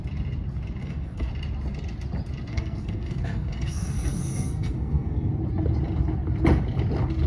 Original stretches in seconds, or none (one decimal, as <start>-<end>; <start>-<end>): 0.0-0.8; 1.3-2.5; 5.3-7.3